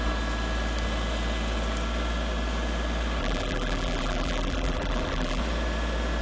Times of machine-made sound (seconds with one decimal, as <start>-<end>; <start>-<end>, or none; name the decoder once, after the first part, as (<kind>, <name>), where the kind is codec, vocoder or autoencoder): 3.2-5.4 (vocoder, BigVGAN v2)